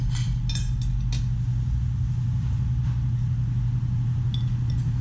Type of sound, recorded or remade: recorded